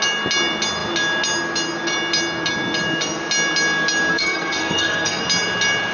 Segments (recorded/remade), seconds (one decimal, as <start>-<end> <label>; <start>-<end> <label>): 0.0-4.1 recorded; 4.1-5.2 remade; 5.2-5.9 recorded